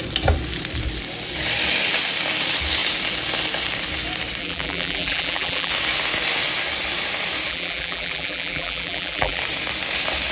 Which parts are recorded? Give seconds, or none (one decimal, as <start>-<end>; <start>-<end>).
0.0-4.4; 5.7-7.5; 9.4-10.3